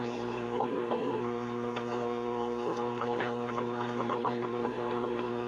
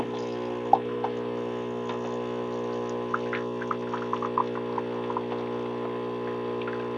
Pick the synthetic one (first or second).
first